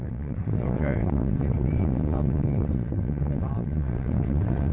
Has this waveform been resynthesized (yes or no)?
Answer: yes